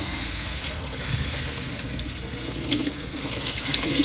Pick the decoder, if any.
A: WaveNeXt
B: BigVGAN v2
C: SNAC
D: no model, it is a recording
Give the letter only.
C